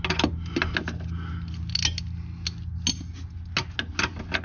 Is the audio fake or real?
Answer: real